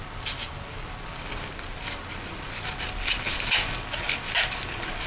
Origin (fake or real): real